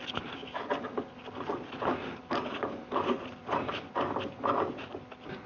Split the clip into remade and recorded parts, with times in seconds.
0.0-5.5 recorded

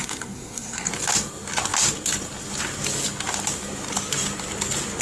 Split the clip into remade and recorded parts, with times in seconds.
0.0-0.9 remade; 0.9-5.0 recorded

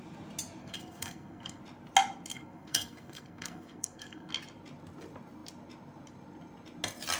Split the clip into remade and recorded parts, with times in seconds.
0.0-0.6 recorded; 0.6-1.6 remade; 1.6-2.3 recorded; 2.3-4.3 remade; 4.3-7.2 recorded

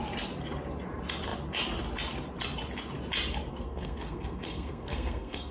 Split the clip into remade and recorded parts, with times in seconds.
0.0-3.5 recorded; 3.5-5.5 remade

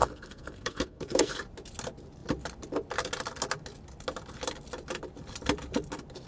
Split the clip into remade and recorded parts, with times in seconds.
0.0-1.4 remade; 1.4-6.3 recorded

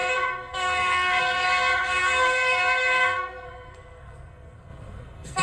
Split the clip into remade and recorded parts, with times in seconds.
0.0-5.4 remade

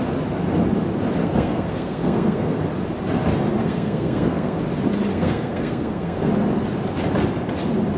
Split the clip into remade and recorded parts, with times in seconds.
0.0-1.2 recorded; 1.2-2.6 remade; 2.6-3.6 recorded; 3.6-4.6 remade; 4.6-5.1 recorded; 5.1-6.3 remade; 6.3-8.0 recorded